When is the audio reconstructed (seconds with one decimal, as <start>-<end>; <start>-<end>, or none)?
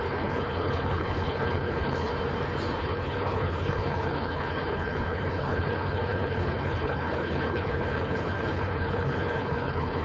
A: 0.0-2.1; 2.8-10.0